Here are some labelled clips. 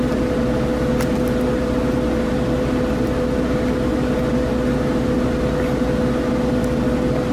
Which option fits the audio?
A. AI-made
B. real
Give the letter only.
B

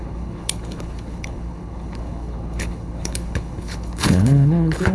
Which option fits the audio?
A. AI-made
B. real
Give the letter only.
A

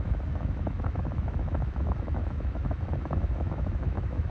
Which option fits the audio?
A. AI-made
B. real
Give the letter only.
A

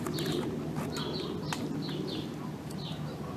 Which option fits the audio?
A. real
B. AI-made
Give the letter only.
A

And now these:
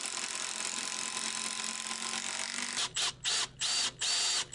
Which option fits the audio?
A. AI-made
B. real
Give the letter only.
B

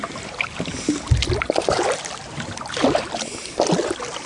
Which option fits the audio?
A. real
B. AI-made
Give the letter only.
A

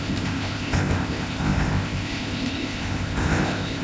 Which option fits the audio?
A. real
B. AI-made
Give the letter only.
B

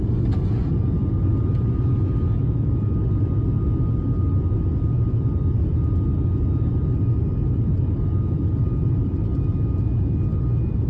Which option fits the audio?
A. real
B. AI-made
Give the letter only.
A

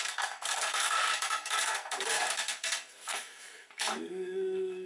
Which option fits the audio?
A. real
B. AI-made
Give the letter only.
B